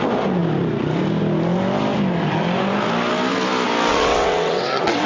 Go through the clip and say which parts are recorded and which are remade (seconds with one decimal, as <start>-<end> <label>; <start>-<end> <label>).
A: 0.0-3.9 recorded; 3.9-5.1 remade